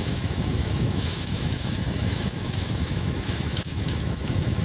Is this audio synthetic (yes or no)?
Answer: yes